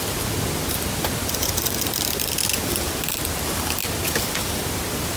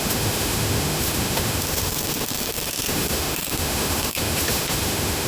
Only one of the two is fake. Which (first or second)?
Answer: second